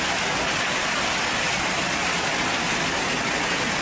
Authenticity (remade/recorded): recorded